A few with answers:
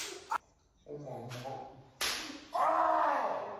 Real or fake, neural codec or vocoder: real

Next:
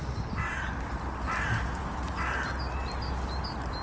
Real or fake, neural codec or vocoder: real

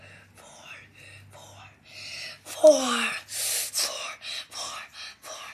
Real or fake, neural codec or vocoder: real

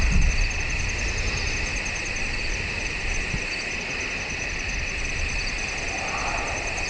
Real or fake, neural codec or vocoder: real